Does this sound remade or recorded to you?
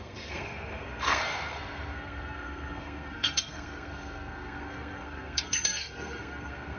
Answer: remade